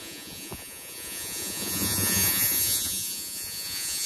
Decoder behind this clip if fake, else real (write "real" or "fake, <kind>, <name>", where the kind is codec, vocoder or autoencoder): fake, vocoder, Vocos